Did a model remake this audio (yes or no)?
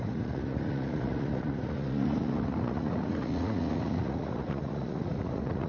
yes